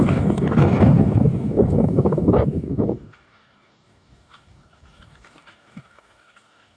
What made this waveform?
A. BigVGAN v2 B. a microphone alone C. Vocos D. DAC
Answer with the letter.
D